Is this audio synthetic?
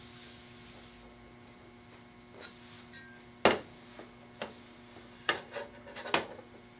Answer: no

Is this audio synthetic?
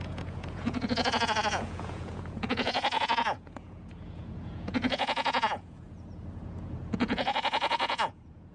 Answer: yes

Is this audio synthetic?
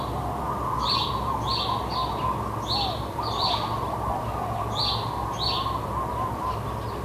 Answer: no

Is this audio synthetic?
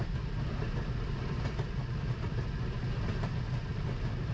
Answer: no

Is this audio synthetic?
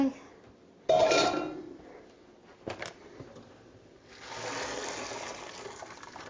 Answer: no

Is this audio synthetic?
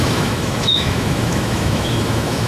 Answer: yes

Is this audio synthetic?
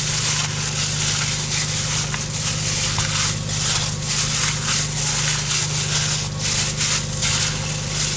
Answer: no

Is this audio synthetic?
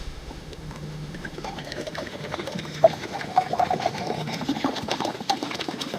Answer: yes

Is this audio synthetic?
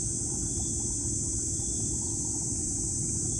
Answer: yes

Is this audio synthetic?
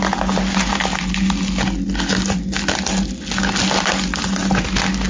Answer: no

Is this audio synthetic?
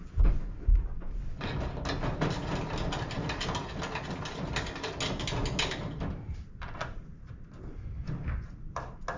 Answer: no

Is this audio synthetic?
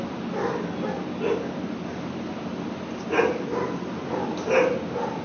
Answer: no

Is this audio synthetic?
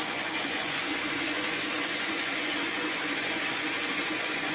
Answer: yes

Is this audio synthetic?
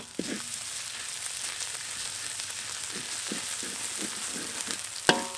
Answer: no